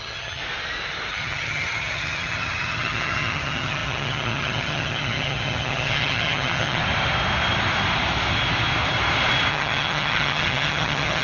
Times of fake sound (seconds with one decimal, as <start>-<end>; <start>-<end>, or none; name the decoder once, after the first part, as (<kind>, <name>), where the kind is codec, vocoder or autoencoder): 0.0-0.4 (vocoder, HiFi-GAN); 1.1-6.8; 9.5-11.2

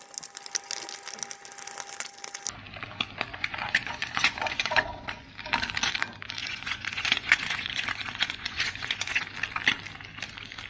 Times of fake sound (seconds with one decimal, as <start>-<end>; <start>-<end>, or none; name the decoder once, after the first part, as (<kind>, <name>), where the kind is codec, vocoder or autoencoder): 3.3-5.3 (vocoder, Vocos); 6.4-9.2

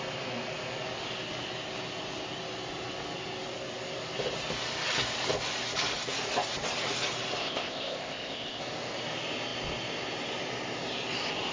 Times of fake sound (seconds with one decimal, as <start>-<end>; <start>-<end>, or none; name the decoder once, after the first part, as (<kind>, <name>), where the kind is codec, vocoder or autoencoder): 7.4-8.6 (codec, ZipCodec)

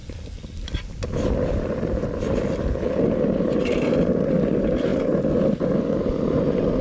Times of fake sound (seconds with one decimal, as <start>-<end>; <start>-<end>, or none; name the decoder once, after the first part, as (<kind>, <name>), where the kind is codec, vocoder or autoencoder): none